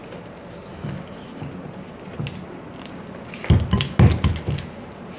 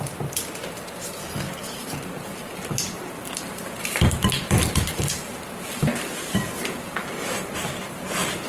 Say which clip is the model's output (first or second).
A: second